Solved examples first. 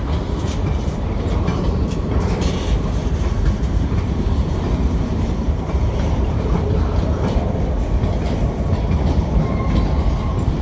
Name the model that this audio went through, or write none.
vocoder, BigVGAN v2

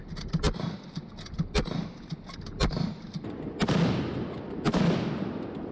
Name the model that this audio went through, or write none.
none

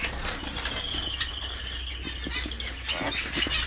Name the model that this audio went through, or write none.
none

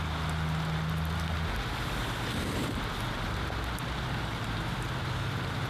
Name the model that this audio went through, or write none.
none